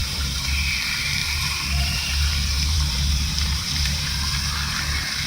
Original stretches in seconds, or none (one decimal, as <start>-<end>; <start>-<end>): 0.7-1.2; 4.4-5.3